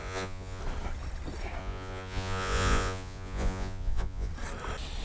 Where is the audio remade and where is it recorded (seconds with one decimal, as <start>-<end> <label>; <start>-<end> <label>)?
0.0-0.6 remade; 0.6-1.6 recorded; 1.6-4.3 remade; 4.3-5.0 recorded